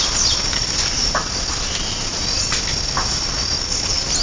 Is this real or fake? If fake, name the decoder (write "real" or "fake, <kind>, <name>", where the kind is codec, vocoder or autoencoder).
real